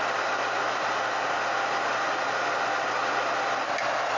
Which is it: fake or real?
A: real